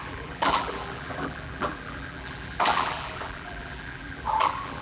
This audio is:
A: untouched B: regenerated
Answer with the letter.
B